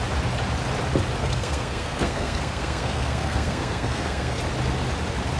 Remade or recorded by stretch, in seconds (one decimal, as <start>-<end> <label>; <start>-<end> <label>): 0.0-1.2 recorded; 1.2-4.4 remade; 4.4-5.4 recorded